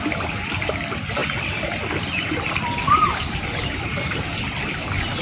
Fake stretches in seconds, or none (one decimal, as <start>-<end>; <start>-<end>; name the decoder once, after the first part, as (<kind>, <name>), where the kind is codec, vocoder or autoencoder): 1.2-4.3 (vocoder, BigVGAN v2)